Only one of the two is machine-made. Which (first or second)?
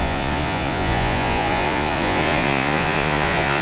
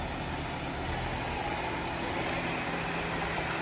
first